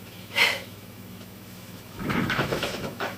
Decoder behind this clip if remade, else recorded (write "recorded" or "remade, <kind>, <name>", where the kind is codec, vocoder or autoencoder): remade, autoencoder, DAC-VAE